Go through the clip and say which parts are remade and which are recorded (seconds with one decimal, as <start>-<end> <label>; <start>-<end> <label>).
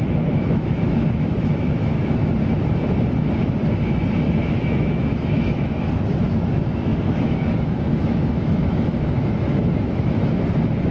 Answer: 0.0-2.3 remade; 2.3-4.1 recorded; 4.1-10.9 remade